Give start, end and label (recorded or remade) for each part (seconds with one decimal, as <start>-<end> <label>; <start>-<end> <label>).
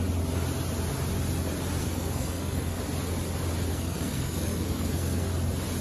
0.0-1.8 recorded; 1.8-2.8 remade; 2.8-3.7 recorded; 3.7-5.3 remade; 5.3-5.8 recorded